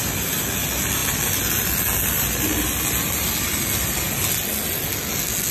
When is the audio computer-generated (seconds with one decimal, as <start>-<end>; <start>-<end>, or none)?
none